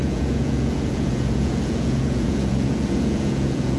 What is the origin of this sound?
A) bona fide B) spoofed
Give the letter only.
B